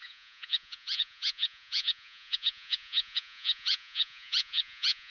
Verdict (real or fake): fake